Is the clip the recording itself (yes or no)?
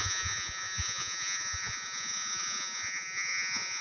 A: no